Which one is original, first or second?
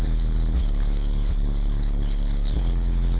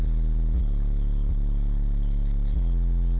second